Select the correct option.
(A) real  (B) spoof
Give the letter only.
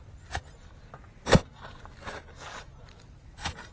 A